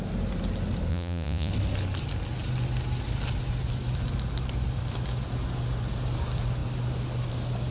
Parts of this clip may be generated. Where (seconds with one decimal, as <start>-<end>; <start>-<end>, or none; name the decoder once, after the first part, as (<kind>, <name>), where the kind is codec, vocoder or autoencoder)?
0.9-1.5 (vocoder, Vocos)